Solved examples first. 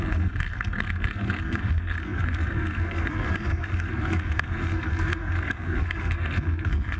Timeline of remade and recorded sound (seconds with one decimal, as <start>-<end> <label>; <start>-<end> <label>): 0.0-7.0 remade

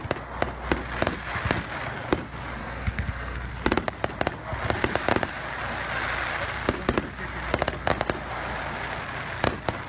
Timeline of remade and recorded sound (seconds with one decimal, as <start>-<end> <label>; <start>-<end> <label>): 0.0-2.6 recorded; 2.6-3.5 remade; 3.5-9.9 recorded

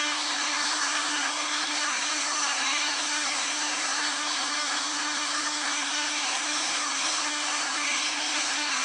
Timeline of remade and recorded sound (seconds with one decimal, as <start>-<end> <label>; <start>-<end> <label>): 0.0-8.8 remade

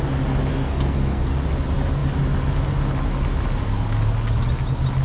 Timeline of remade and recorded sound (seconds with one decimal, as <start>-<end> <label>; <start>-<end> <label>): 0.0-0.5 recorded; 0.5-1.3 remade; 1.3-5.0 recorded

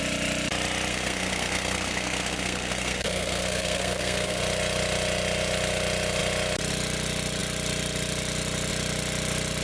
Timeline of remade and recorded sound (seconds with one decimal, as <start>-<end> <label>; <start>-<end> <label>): 0.0-0.9 recorded; 0.9-4.4 remade; 4.4-9.6 recorded

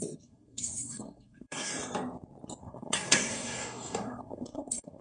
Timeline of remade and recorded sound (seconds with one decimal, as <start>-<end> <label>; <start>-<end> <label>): 0.0-1.7 remade; 1.7-2.6 recorded; 2.6-5.0 remade

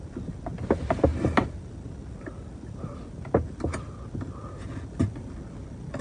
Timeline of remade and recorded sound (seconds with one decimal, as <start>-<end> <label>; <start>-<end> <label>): 0.0-6.0 recorded

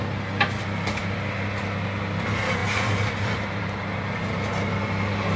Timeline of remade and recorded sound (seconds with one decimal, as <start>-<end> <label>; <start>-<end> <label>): 0.0-5.4 recorded